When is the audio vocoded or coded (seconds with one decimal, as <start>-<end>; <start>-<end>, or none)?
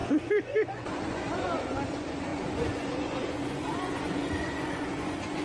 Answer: 0.0-5.4